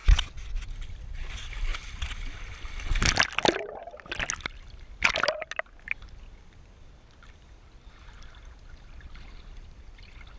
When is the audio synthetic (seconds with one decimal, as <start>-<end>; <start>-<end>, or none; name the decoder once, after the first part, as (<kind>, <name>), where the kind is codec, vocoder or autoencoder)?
1.0-1.7 (vocoder, BigVGAN v2); 6.8-10.4